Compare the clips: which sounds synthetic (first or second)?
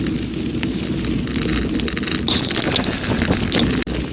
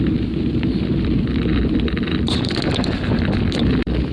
second